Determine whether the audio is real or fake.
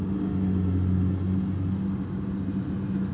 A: real